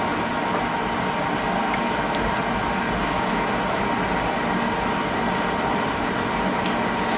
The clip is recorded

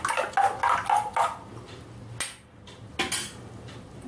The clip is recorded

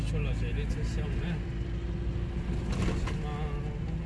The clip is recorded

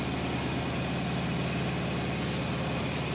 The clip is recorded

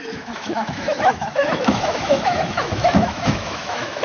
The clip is remade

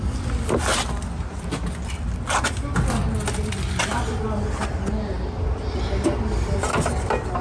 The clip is recorded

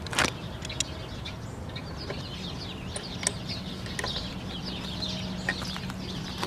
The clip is recorded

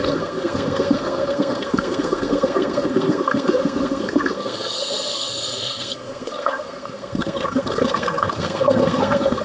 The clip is remade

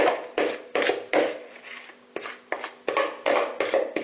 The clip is recorded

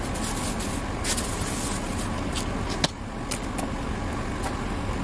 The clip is recorded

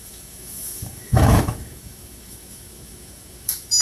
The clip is remade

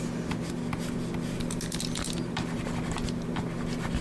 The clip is recorded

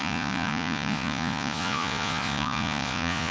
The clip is remade